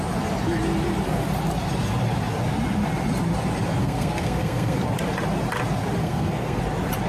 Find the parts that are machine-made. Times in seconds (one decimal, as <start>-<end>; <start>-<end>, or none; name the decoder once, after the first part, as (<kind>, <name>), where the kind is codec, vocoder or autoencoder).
3.8-4.8 (codec, SNAC); 6.0-6.6